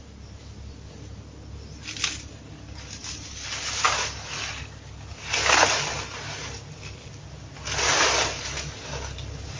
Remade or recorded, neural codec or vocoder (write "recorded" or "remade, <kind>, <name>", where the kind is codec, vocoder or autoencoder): recorded